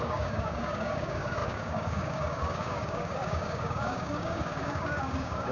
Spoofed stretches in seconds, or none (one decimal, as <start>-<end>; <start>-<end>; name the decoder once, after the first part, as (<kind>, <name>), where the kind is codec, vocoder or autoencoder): 0.0-5.5 (codec, DAC)